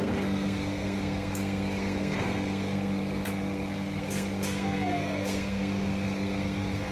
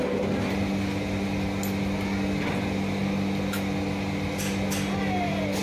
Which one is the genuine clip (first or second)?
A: second